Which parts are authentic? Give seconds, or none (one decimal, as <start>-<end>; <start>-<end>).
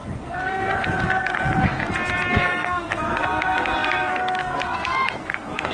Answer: 1.8-2.3